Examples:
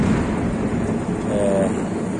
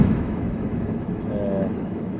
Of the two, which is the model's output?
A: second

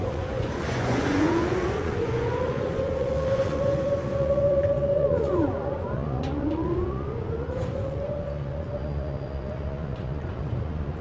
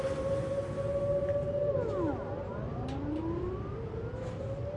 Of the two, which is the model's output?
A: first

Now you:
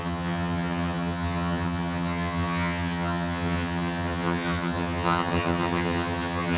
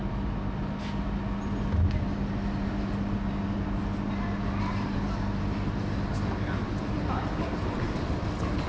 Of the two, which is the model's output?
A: first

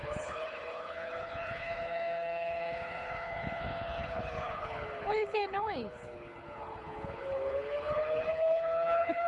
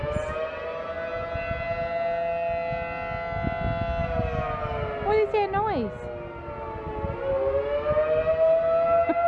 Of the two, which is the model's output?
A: first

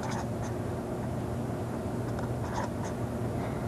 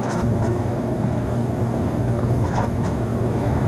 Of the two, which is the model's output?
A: second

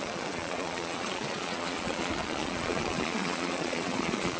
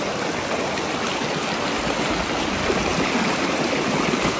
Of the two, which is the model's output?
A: first